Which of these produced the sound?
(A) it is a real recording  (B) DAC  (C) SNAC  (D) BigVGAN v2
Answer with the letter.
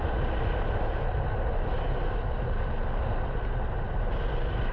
A